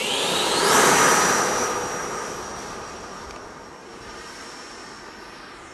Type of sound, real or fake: real